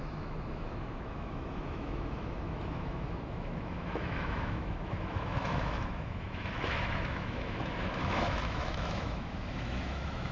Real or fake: fake